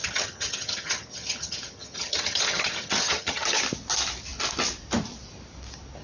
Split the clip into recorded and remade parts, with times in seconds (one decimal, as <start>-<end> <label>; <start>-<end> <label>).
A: 0.0-3.6 remade; 3.6-6.0 recorded